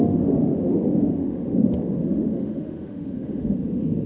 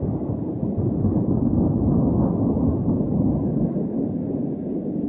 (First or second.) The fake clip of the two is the first